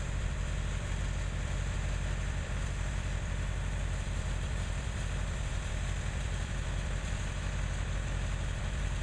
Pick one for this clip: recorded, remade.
remade